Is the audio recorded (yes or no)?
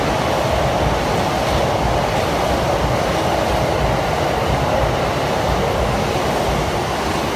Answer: yes